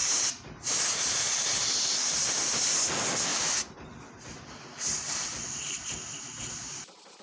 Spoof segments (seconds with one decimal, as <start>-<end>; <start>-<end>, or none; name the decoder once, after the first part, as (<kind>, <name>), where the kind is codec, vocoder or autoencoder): 3.3-5.6 (vocoder, BigVGAN v2)